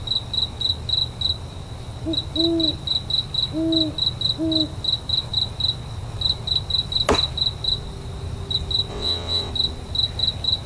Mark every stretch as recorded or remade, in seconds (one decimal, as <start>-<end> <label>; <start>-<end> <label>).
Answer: 0.0-8.9 recorded; 8.9-9.5 remade; 9.5-10.7 recorded